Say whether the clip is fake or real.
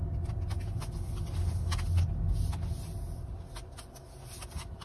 real